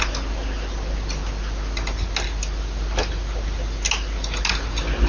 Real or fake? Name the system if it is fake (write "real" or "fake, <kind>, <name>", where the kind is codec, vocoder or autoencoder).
real